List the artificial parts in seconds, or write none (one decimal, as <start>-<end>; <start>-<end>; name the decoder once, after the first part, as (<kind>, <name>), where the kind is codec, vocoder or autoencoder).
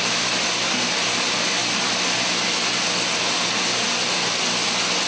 none